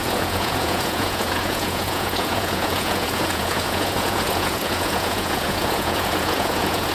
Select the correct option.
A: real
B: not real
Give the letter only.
B